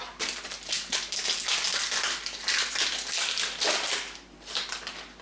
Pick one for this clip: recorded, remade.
recorded